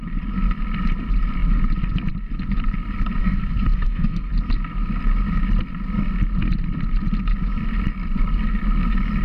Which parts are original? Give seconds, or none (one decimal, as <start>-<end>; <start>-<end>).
0.0-3.2; 4.3-9.2

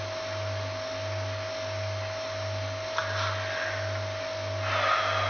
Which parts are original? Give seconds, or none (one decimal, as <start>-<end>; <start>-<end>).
0.0-5.3

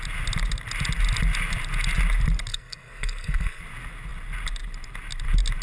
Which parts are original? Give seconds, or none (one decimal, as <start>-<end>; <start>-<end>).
0.0-2.5; 3.6-5.6

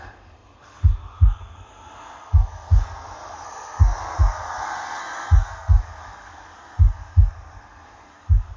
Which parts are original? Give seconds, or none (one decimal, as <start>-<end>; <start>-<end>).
none

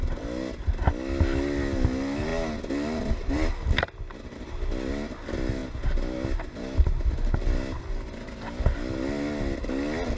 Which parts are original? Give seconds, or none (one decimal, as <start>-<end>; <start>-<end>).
0.0-10.2

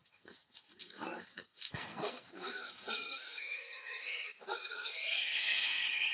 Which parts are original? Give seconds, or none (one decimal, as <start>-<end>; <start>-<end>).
none

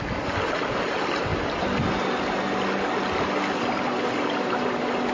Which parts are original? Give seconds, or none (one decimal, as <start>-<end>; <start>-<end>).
0.0-5.1